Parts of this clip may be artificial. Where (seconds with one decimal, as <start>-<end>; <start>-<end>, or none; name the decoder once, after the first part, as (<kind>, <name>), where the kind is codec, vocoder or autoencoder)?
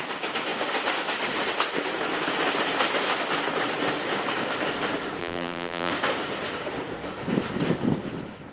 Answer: 5.2-5.9 (vocoder, BigVGAN v2)